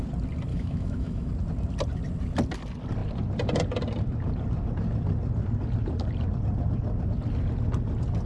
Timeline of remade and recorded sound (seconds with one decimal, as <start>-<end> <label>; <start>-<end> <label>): 0.0-0.5 recorded; 0.5-1.3 remade; 1.3-8.3 recorded